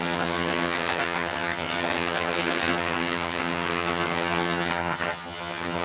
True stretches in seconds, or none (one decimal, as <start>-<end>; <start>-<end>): none

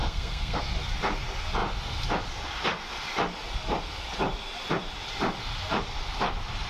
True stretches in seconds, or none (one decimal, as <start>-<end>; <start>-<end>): 0.6-6.7

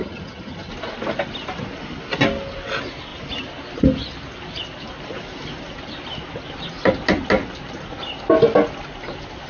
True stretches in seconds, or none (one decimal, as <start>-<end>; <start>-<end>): 0.7-9.5

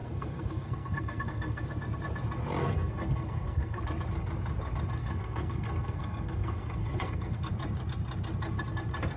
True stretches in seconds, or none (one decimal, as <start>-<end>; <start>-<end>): 1.6-2.6; 3.8-5.0; 7.5-9.2

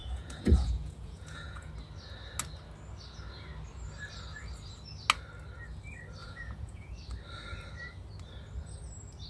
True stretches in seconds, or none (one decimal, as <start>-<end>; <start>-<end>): 1.7-6.2; 6.9-9.3

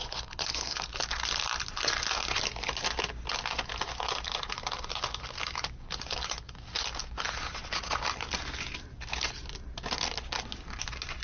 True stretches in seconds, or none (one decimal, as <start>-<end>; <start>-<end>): 0.9-11.2

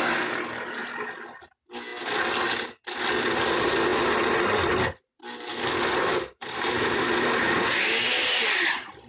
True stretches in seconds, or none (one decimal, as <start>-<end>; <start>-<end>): 0.0-6.1; 7.1-9.1